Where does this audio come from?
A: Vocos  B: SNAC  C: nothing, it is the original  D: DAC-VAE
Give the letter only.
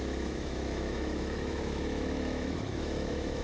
D